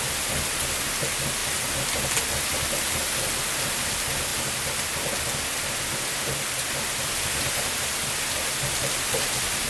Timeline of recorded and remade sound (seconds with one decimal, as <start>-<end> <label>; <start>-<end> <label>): 0.0-9.7 recorded